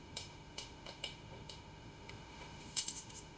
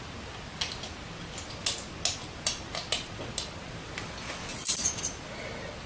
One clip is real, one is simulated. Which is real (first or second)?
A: second